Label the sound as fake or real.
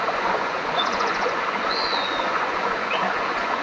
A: fake